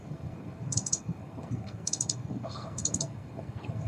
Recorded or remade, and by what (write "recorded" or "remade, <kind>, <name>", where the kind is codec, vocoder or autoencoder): remade, codec, SNAC